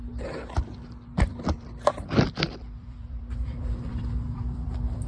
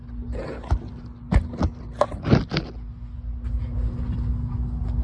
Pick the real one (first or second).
second